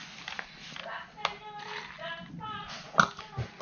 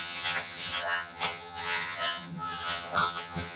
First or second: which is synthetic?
second